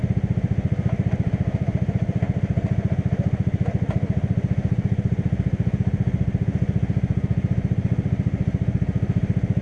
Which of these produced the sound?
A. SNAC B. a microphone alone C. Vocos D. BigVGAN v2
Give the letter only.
B